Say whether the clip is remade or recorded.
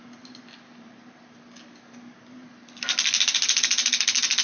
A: recorded